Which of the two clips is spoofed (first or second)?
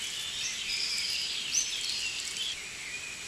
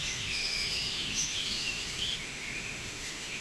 second